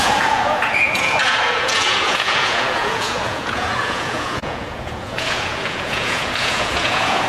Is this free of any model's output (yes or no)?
no